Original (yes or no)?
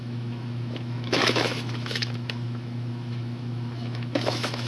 no